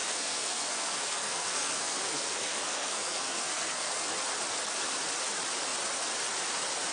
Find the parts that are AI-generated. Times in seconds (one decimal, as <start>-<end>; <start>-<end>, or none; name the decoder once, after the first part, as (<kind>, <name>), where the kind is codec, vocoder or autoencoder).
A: 0.0-4.1 (codec, SNAC)